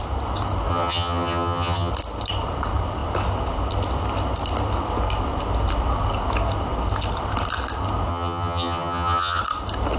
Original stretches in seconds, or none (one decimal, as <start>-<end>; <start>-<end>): 0.0-0.7; 1.9-8.1; 9.4-10.0